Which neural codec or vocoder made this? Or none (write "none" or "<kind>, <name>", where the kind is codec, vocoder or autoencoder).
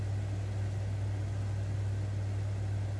none